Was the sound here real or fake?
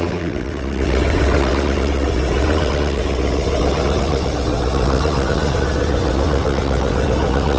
fake